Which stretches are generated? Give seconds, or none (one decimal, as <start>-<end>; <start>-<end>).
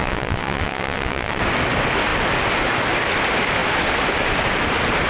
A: 0.0-1.4